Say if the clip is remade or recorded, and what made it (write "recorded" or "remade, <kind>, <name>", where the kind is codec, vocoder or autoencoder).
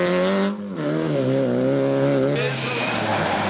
recorded